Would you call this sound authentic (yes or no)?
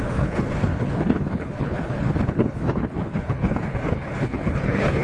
no